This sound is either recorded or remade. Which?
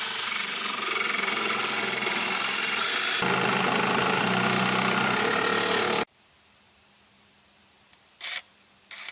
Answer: recorded